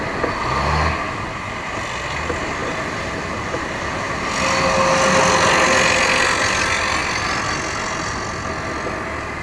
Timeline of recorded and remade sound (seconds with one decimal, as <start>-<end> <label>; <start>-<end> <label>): 0.0-9.4 recorded